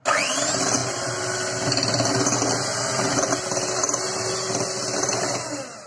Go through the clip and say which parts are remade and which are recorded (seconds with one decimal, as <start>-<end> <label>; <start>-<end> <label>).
0.0-5.9 recorded